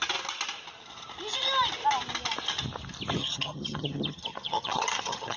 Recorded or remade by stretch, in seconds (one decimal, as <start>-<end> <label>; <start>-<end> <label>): 0.0-3.2 recorded; 3.2-5.4 remade